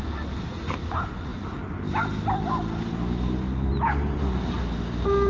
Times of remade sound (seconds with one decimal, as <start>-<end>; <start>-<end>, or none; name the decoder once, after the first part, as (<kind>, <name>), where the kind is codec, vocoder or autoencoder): none